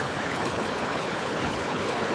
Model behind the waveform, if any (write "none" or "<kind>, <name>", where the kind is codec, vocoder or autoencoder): codec, HILCodec